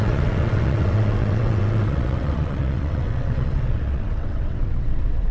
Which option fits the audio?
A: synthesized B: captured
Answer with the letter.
A